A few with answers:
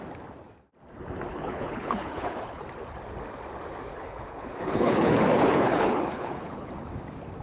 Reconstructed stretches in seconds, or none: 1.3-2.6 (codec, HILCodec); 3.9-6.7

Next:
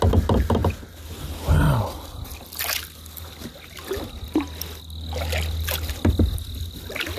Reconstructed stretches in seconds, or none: none

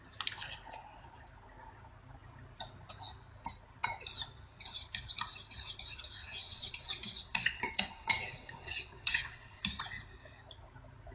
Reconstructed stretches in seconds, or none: 6.2-9.6 (vocoder, WaveNeXt)

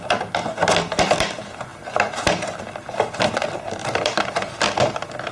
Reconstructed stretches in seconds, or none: none